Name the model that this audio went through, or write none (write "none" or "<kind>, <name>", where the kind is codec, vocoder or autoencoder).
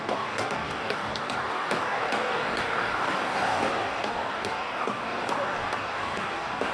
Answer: codec, DAC